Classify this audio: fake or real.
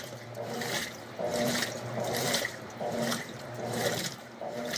fake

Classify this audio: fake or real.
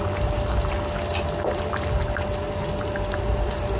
real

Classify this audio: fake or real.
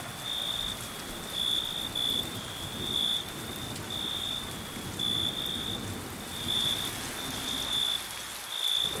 real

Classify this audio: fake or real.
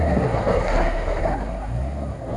fake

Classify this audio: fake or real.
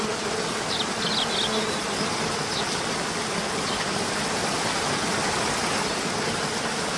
real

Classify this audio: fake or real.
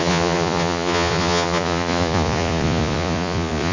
fake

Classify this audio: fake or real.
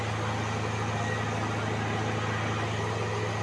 real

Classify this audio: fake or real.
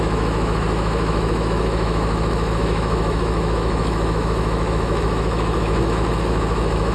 fake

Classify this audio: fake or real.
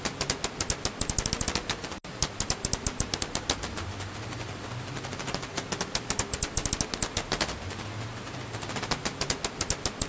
real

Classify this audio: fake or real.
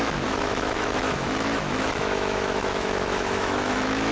fake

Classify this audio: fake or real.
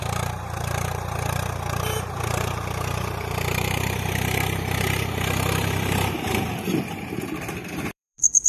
fake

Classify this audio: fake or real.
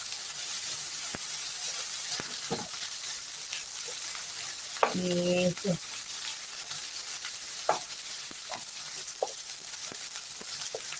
real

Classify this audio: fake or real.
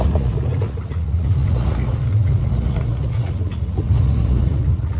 fake